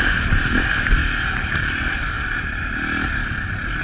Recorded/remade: recorded